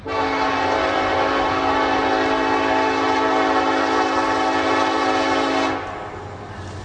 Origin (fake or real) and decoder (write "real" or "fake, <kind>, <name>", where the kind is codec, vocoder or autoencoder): real